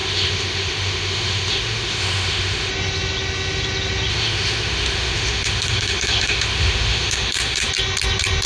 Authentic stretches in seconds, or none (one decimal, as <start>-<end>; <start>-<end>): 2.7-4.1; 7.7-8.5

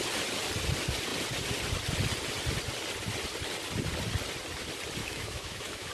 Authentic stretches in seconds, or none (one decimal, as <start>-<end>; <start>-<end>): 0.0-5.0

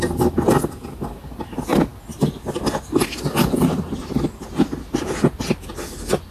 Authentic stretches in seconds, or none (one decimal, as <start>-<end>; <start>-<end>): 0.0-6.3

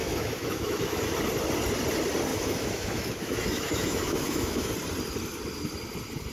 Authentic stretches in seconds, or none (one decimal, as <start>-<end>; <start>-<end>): 1.1-2.3; 4.7-6.3

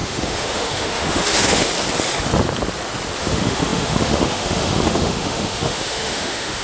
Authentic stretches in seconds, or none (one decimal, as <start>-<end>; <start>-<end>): 1.7-3.2

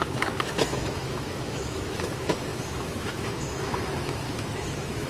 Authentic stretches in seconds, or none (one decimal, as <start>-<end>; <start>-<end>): none